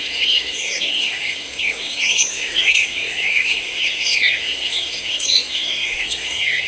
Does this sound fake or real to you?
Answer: fake